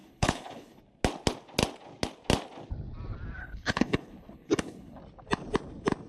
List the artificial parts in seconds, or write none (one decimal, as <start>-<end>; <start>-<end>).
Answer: 0.0-0.8; 3.4-5.0